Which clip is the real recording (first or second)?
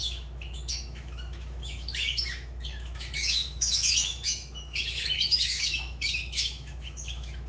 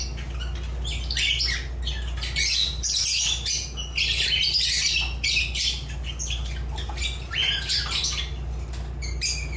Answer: second